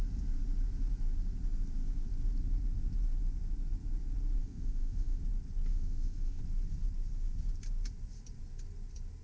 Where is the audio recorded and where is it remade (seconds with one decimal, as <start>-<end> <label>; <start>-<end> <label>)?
0.0-4.4 recorded; 4.4-5.2 remade; 5.2-5.7 recorded; 5.7-6.4 remade; 6.4-9.2 recorded